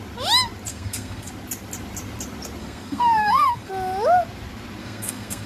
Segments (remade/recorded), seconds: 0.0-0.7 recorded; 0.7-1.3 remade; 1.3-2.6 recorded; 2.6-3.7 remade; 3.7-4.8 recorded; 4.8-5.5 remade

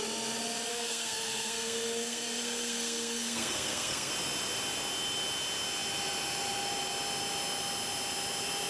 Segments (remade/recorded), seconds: 0.0-0.7 recorded; 0.7-4.1 remade; 4.1-8.7 recorded